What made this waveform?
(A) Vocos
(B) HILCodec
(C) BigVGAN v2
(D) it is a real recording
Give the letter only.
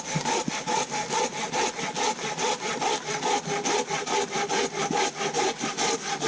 D